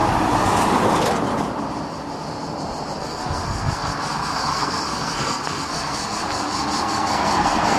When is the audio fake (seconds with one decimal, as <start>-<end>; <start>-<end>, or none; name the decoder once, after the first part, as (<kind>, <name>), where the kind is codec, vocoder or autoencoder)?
3.0-7.8 (codec, SNAC)